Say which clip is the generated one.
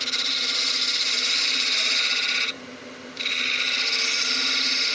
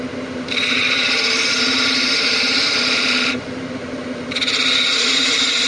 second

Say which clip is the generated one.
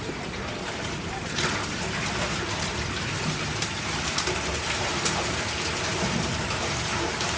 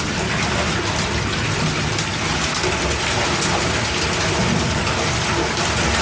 first